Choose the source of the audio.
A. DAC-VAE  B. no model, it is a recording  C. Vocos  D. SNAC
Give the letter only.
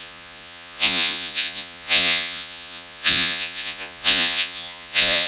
C